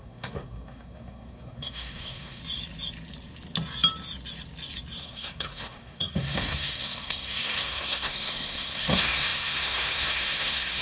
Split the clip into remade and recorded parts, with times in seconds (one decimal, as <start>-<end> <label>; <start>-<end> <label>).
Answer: 0.0-2.4 remade; 2.4-5.0 recorded; 5.0-10.8 remade